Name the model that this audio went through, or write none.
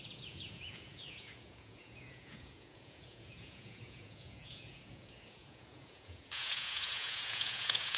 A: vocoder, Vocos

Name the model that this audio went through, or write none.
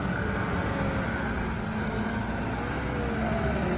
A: none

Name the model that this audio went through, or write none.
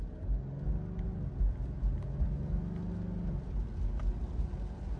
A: none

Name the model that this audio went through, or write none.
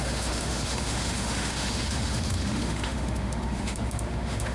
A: autoencoder, DAC-VAE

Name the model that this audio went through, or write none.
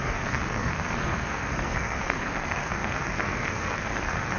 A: codec, SNAC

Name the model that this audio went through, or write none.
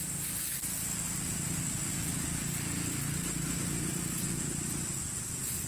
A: none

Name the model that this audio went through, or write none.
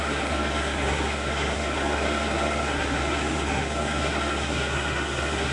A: codec, SNAC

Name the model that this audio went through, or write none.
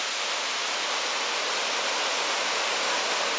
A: none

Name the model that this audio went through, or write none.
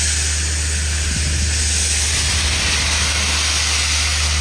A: none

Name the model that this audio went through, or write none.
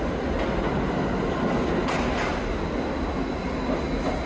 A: none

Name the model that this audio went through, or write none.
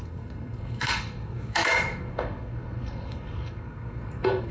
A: codec, SNAC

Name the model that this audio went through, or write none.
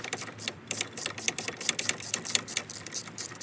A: vocoder, BigVGAN v2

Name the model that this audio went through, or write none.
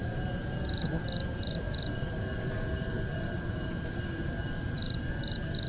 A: vocoder, BigVGAN v2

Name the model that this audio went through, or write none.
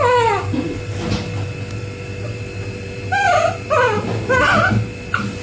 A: none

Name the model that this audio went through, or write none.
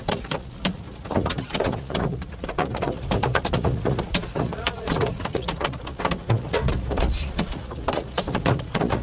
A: vocoder, Vocos